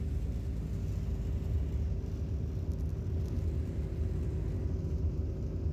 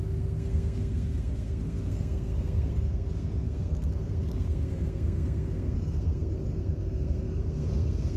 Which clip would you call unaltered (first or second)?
first